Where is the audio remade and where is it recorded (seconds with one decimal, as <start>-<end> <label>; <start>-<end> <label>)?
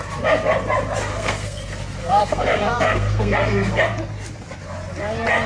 0.0-1.1 recorded; 1.1-1.6 remade; 1.6-2.0 recorded; 2.0-3.8 remade; 3.8-5.5 recorded